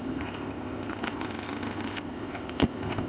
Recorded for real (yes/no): no